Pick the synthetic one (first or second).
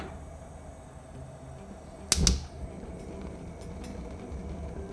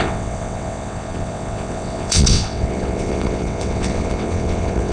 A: second